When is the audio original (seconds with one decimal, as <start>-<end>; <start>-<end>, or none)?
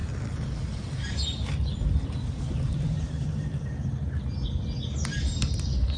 0.0-6.0